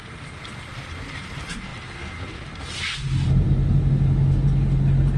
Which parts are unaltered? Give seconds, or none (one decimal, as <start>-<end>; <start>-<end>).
0.0-5.2